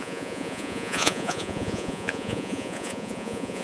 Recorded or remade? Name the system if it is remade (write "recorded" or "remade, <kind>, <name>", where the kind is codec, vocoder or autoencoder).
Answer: remade, vocoder, Vocos